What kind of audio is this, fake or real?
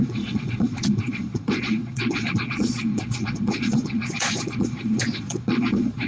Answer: fake